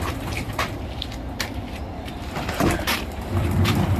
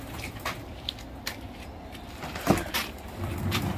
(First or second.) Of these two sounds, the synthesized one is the first